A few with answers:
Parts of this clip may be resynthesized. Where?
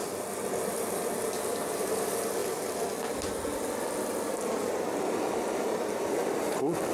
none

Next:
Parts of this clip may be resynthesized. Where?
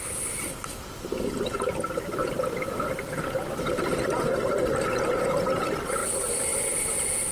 0.0-7.3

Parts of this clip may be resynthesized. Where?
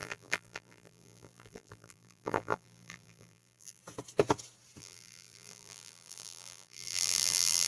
0.0-3.8; 4.8-7.7